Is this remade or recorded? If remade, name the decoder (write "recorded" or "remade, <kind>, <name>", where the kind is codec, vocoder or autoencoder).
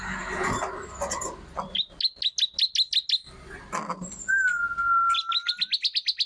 recorded